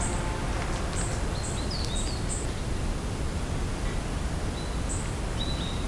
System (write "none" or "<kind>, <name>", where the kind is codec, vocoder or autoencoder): none